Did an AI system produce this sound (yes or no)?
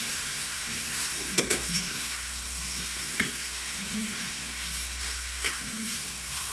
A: yes